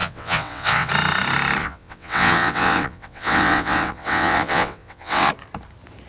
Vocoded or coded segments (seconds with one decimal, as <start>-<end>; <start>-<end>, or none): 0.0-0.9; 1.6-5.3